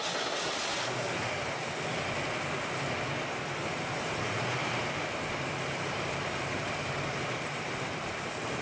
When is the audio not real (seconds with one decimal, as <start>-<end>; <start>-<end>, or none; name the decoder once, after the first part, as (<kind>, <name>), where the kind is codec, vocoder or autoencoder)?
0.7-1.3 (vocoder, BigVGAN v2); 4.6-8.6